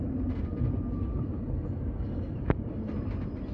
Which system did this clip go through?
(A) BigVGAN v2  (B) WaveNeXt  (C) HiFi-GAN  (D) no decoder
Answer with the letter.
A